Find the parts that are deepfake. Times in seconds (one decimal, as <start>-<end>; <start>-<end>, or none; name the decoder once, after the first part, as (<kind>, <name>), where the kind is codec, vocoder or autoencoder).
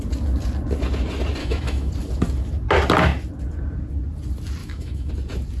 1.4-1.9 (autoencoder, DAC-VAE); 4.6-5.1